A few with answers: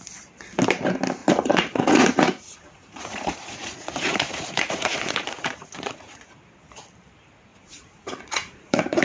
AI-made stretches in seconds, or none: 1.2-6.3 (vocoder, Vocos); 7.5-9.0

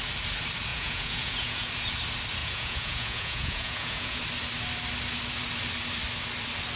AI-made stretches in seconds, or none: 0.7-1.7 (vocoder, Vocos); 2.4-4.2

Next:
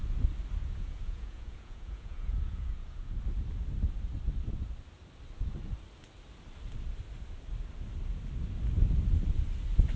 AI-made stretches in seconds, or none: 0.6-3.2 (vocoder, Vocos)

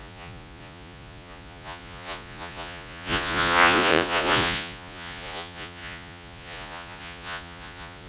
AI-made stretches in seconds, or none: 0.0-8.1 (vocoder, Vocos)

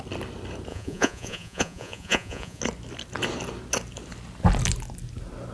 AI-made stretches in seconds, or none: 0.7-2.6 (vocoder, Vocos)

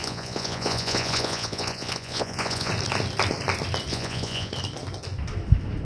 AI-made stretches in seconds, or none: 0.0-2.7 (vocoder, Vocos); 3.9-4.5

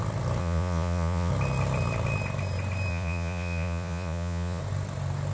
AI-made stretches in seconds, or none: 0.4-1.3 (vocoder, Vocos); 2.9-4.6